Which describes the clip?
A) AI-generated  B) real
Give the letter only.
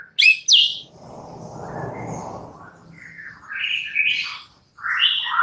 B